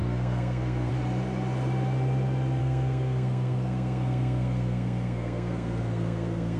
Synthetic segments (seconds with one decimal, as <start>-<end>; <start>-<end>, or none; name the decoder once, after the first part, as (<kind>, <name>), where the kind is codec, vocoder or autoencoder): 0.0-0.9 (codec, SNAC); 2.6-6.6